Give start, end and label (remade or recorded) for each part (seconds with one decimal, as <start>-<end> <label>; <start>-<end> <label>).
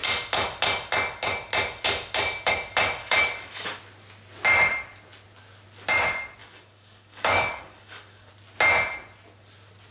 0.0-3.0 recorded; 3.0-3.8 remade; 3.8-6.4 recorded; 6.4-8.3 remade; 8.3-9.9 recorded